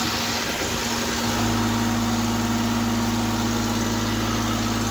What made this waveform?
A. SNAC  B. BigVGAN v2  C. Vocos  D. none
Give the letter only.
D